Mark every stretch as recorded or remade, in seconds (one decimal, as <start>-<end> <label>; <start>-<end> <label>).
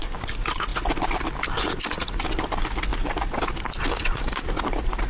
0.0-5.1 recorded